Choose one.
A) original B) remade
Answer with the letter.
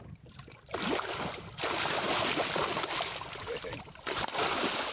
A